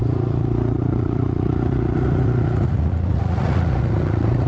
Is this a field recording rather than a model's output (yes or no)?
no